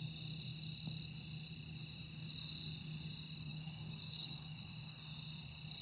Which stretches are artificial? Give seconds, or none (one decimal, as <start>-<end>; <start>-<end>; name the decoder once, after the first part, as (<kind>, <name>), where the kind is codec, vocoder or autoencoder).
3.5-4.7 (codec, DAC)